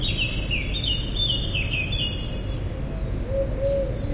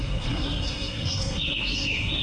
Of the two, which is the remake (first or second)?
second